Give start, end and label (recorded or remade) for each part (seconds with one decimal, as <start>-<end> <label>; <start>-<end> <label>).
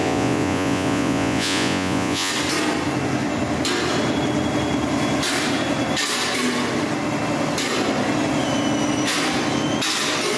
0.0-2.3 remade; 2.3-10.4 recorded